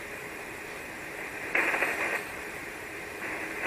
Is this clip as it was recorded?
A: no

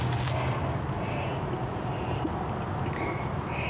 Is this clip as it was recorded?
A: yes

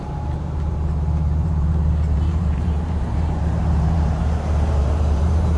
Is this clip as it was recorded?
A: no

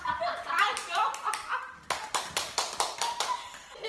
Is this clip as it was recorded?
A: no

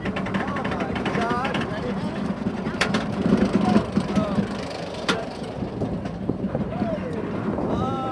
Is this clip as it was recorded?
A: no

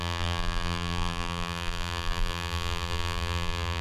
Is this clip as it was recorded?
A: no